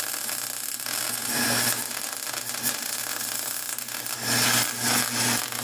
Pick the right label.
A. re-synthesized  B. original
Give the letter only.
B